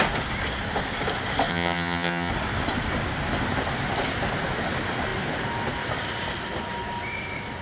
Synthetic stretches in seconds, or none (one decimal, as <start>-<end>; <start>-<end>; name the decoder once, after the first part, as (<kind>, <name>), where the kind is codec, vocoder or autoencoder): 1.5-2.3 (vocoder, HiFi-GAN)